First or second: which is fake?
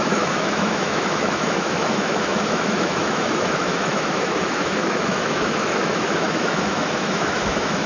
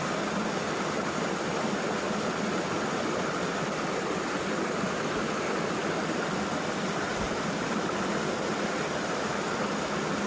first